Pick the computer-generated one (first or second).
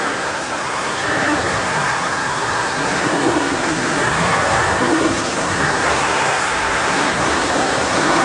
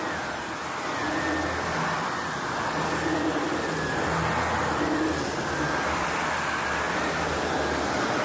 first